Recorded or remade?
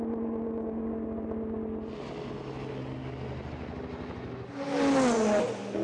recorded